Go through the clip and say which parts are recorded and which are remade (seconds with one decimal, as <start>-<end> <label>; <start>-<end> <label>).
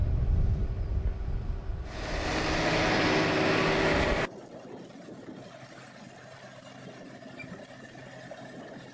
0.0-8.9 recorded